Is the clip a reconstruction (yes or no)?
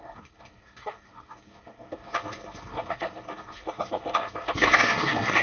yes